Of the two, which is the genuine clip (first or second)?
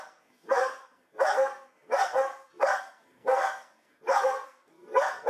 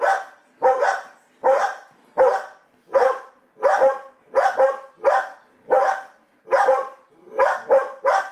second